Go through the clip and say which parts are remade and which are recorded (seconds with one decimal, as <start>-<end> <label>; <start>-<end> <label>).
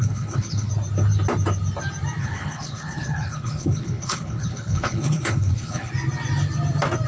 0.0-0.7 remade; 0.7-2.2 recorded; 2.2-5.9 remade; 5.9-7.1 recorded